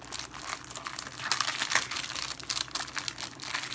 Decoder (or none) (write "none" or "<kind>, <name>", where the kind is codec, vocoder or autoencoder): none